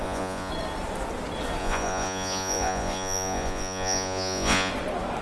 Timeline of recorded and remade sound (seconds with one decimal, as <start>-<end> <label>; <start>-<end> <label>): 0.0-0.5 remade; 0.5-1.6 recorded; 1.6-4.7 remade; 4.7-5.2 recorded